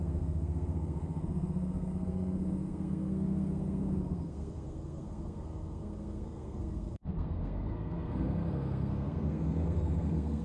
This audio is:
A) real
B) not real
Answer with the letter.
B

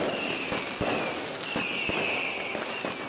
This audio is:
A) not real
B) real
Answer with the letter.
B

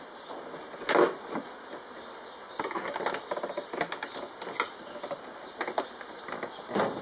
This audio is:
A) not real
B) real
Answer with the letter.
B